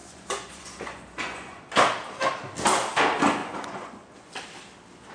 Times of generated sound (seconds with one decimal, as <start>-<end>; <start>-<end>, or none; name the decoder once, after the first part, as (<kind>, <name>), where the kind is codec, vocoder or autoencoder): 0.0-1.6 (vocoder, Vocos); 3.4-4.3